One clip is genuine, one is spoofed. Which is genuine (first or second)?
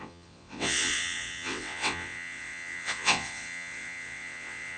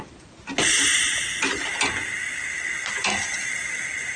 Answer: second